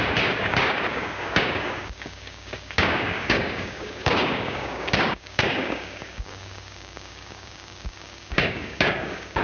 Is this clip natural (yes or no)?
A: no